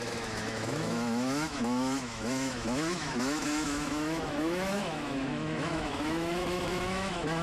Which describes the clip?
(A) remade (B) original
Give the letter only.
A